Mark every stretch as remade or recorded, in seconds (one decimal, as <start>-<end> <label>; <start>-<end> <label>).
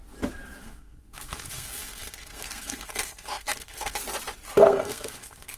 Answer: 0.0-0.6 recorded; 0.6-4.0 remade; 4.0-4.6 recorded; 4.6-5.6 remade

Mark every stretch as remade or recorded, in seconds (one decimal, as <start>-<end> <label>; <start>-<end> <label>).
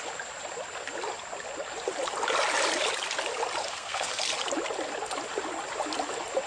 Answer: 0.0-3.6 recorded; 3.6-4.2 remade; 4.2-6.5 recorded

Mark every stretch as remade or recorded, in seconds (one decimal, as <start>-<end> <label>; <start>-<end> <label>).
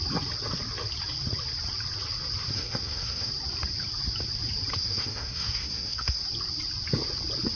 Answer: 0.0-2.5 recorded; 2.5-3.3 remade; 3.3-4.7 recorded; 4.7-6.2 remade; 6.2-7.6 recorded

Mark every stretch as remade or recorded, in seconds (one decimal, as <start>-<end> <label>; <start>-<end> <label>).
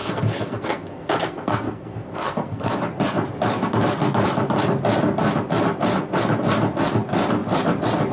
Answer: 0.0-2.7 remade; 2.7-8.1 recorded